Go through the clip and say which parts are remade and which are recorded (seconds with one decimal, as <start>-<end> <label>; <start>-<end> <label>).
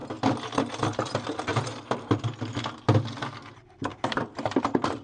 0.0-1.5 recorded; 1.5-2.6 remade; 2.6-3.9 recorded; 3.9-4.6 remade; 4.6-5.0 recorded